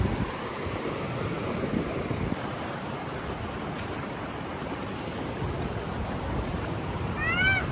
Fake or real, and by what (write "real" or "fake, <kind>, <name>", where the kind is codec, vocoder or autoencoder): fake, vocoder, BigVGAN v2